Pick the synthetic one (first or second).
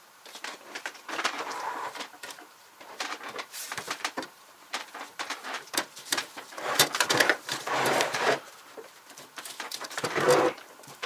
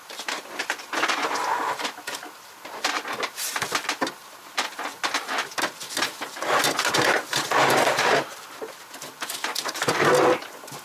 first